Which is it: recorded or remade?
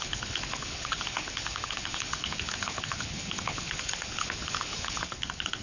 remade